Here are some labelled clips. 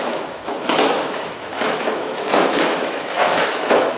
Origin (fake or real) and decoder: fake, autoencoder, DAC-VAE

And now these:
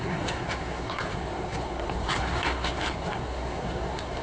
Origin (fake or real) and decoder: fake, codec, SNAC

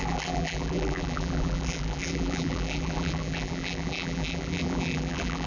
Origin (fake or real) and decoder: fake, vocoder, BigVGAN v2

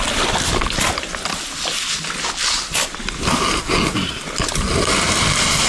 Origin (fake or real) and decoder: real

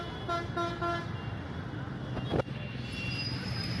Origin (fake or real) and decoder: real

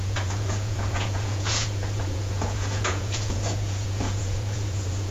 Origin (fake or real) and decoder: fake, vocoder, Vocos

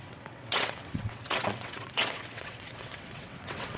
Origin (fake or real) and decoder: fake, vocoder, WaveNeXt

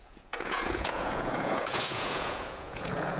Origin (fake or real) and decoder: fake, vocoder, Vocos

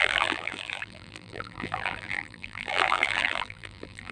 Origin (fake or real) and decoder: fake, vocoder, BigVGAN v2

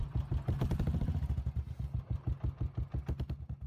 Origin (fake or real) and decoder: real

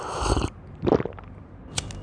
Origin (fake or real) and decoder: real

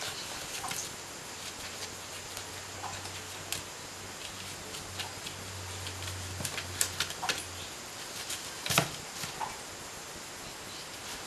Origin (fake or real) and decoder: real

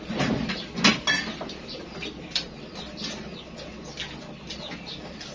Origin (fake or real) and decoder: real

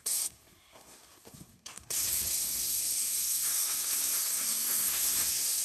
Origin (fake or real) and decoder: fake, codec, SNAC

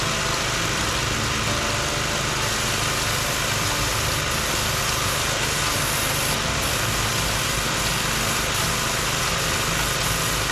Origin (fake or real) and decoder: real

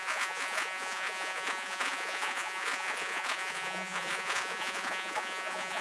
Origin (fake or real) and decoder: fake, vocoder, Vocos